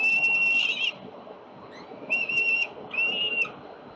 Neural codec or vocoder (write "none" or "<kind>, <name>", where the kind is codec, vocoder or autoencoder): none